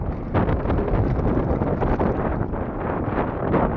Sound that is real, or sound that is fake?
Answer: real